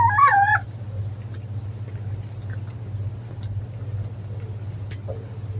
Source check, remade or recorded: recorded